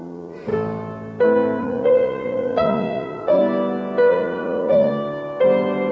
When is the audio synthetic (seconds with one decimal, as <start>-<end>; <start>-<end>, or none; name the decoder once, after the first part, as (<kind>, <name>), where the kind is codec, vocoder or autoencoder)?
0.0-0.5 (vocoder, Vocos); 1.6-3.4; 4.1-4.9